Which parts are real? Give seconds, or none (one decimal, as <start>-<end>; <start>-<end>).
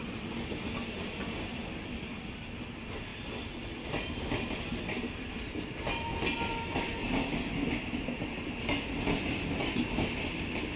0.0-10.8